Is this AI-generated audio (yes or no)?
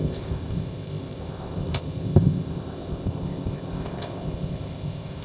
yes